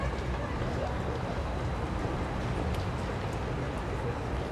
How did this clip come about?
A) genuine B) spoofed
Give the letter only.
A